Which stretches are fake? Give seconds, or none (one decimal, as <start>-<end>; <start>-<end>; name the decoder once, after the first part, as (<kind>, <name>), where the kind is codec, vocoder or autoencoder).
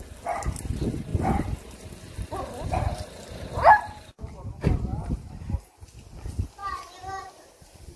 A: 4.9-5.7 (vocoder, BigVGAN v2); 6.6-8.0